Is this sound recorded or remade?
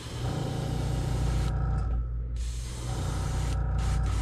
recorded